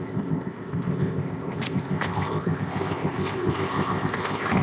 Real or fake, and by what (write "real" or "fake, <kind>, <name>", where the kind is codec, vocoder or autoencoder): fake, codec, ZipCodec